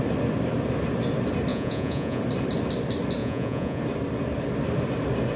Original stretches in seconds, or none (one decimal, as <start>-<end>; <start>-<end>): 0.0-1.5; 2.2-3.2; 3.8-5.4